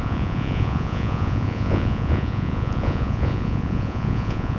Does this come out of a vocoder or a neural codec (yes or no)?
yes